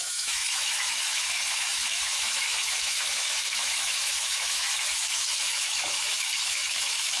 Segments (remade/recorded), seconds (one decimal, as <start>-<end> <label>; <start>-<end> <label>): 0.0-7.2 remade